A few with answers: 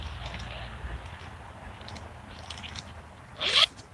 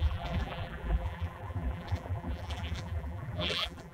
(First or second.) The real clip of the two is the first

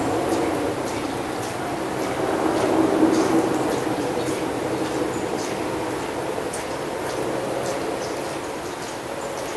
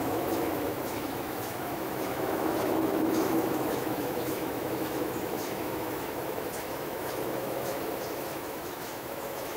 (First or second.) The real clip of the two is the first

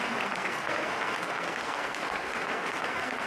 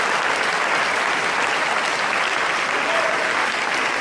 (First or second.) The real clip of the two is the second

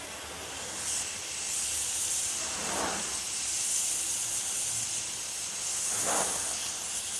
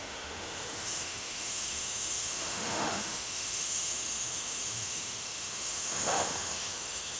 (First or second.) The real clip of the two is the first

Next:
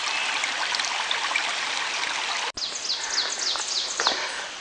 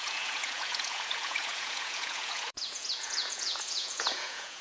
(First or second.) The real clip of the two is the first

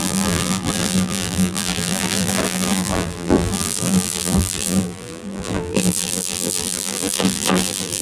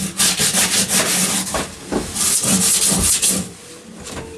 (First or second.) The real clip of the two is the second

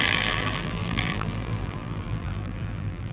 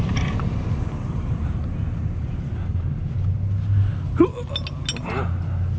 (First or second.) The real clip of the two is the second